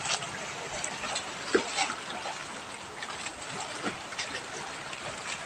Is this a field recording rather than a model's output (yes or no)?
yes